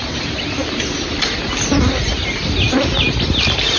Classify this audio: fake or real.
real